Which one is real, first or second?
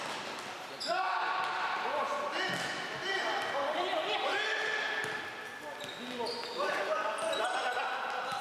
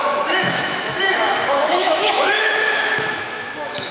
first